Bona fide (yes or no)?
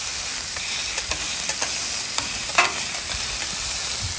yes